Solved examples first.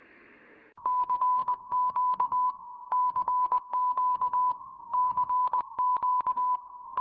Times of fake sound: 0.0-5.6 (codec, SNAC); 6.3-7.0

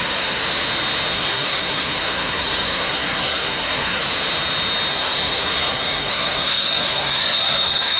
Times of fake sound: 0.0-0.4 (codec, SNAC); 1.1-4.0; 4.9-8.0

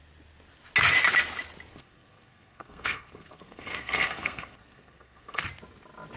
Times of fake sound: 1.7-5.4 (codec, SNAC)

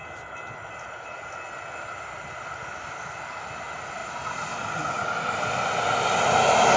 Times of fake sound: none

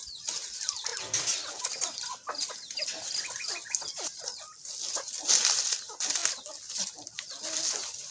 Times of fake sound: none

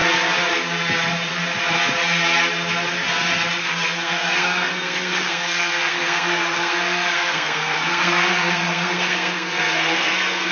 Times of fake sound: 3.6-10.5 (codec, SNAC)

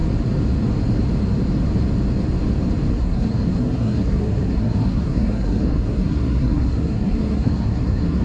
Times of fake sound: 2.9-8.2 (codec, SNAC)

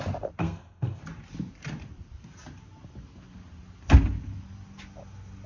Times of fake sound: 0.4-1.0 (codec, SNAC)